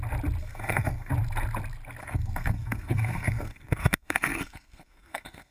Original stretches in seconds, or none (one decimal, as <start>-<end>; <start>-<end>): 0.0-0.4; 1.1-2.0